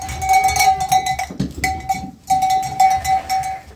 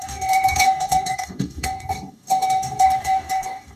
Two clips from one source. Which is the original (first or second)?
first